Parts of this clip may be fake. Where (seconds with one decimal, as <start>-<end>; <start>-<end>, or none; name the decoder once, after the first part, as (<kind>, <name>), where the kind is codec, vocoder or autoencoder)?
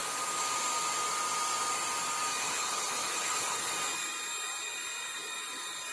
2.4-3.7 (codec, HILCodec)